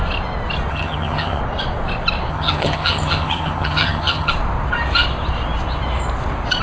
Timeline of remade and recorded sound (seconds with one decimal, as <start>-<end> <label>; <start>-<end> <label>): 0.0-0.7 recorded; 0.7-1.4 remade; 1.4-2.3 recorded; 2.3-4.3 remade; 4.3-6.6 recorded